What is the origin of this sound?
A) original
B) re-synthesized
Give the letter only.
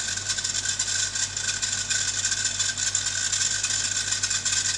A